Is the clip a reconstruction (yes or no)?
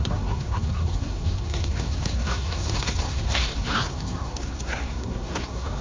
yes